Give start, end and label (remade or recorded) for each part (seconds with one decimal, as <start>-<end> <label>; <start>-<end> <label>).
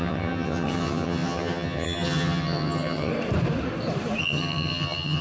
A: 0.0-3.1 remade; 3.1-4.2 recorded; 4.2-5.2 remade